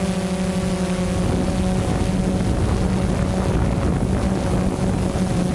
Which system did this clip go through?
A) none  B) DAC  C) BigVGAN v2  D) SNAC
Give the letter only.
A